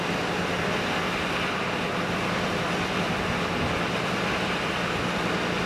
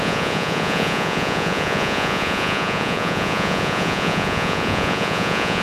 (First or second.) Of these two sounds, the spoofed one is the second